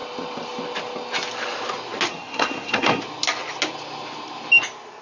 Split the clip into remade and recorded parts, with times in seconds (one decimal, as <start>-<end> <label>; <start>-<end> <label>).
0.0-2.1 recorded; 2.1-3.0 remade; 3.0-5.0 recorded